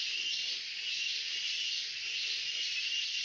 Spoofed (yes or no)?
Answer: yes